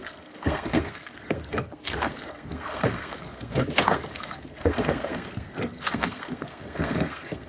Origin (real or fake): fake